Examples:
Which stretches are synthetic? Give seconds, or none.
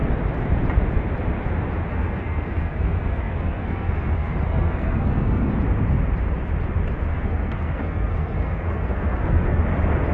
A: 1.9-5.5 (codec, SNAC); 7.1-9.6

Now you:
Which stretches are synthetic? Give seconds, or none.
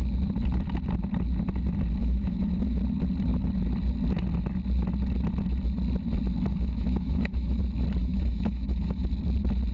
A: 2.0-2.8 (autoencoder, DAC-VAE); 6.5-7.6; 8.0-9.1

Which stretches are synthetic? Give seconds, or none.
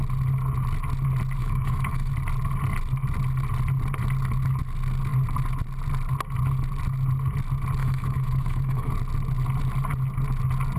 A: 1.4-2.1 (autoencoder, DAC-VAE); 7.8-8.9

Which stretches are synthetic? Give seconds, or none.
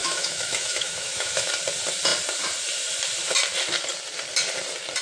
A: 0.0-1.5 (autoencoder, DAC-VAE)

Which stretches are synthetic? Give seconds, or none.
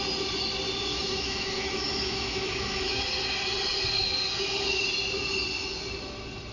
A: 0.9-3.0 (autoencoder, DAC-VAE)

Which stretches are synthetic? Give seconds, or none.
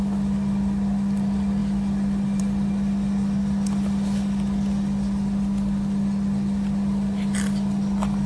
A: none